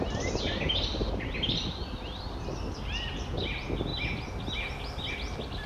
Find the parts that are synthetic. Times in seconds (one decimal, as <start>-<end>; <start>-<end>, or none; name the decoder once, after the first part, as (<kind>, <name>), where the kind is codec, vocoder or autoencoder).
none